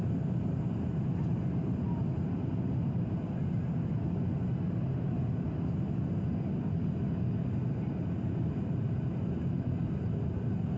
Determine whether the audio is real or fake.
real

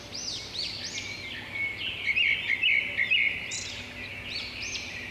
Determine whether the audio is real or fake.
real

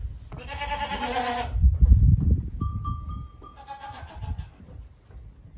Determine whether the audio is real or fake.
real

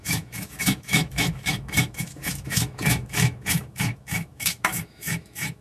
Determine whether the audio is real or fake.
fake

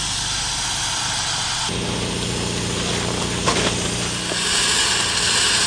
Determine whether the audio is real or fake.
real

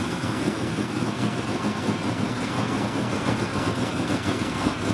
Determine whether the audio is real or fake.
fake